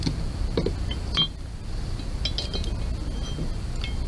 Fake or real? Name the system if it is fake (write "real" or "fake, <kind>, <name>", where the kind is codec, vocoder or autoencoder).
real